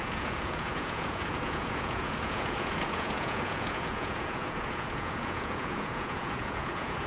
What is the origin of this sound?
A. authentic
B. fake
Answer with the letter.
B